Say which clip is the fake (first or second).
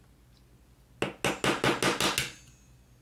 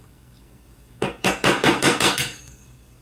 second